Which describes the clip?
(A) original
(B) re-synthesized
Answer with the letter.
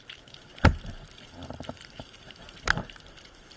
B